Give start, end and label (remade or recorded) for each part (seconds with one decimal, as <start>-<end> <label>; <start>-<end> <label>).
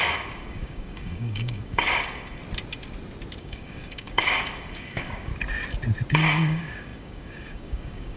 0.0-2.4 remade; 2.4-3.4 recorded; 3.4-5.3 remade; 5.3-6.1 recorded; 6.1-8.2 remade